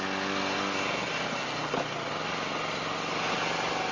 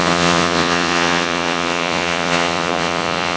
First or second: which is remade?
second